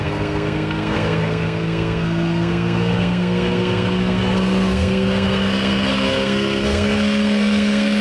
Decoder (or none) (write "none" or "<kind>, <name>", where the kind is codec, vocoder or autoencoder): codec, SNAC